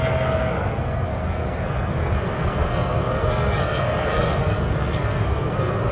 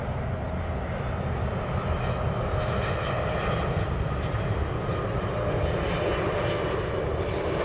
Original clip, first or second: second